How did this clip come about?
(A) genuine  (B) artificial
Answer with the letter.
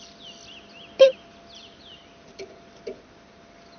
B